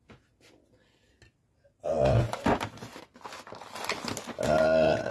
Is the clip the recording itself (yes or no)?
yes